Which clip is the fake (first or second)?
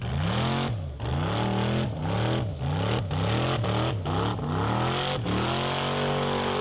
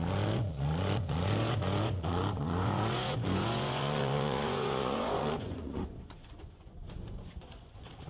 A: second